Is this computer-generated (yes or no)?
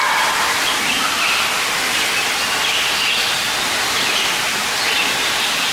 no